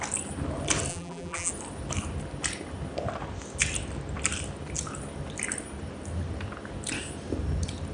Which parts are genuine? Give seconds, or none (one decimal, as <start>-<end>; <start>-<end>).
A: 0.0-0.9; 1.5-7.9